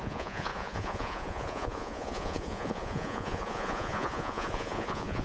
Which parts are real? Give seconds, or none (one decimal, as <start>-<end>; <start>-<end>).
none